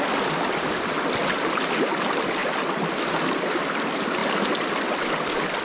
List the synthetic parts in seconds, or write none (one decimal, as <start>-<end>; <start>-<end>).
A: none